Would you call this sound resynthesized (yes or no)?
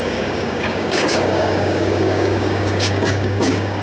yes